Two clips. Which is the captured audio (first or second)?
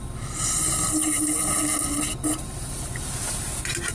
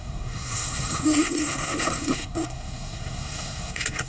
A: first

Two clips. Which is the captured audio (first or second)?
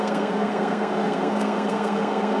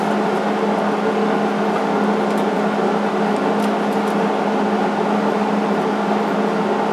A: second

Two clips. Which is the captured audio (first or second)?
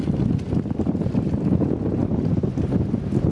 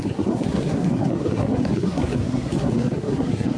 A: first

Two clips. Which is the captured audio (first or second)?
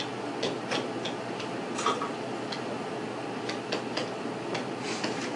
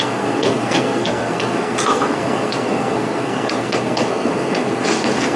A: first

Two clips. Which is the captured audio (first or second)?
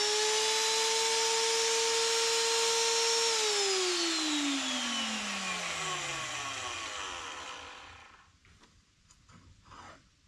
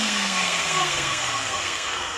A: first